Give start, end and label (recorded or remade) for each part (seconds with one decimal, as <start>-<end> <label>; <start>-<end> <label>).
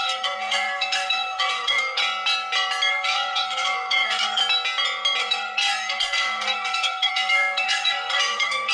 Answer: 0.0-2.0 remade; 2.0-2.9 recorded; 2.9-4.4 remade; 4.4-5.2 recorded; 5.2-8.7 remade